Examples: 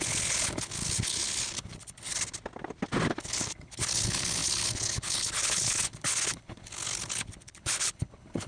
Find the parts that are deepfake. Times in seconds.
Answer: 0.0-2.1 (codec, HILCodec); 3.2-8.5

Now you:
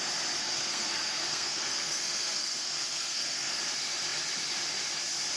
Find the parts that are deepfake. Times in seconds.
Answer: 0.4-3.6 (codec, SNAC)

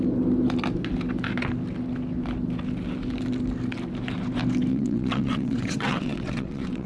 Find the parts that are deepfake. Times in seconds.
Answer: 4.7-6.9 (vocoder, WaveNeXt)

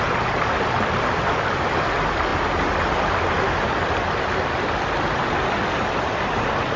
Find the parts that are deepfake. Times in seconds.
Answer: none

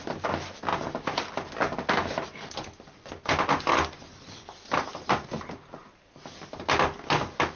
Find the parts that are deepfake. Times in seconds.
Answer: none

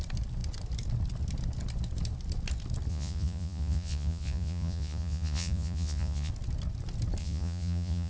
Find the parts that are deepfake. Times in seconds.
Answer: 2.9-6.3 (vocoder, Vocos); 7.2-8.1

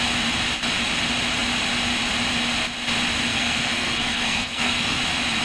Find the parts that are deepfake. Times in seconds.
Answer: 3.3-5.0 (codec, SNAC)